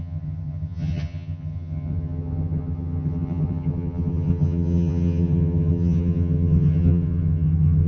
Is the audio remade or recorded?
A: remade